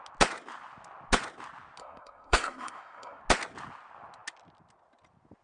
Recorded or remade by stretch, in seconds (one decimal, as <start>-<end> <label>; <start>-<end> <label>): 0.0-1.8 recorded; 1.8-3.2 remade; 3.2-5.4 recorded